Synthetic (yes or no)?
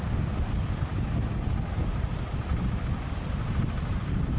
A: no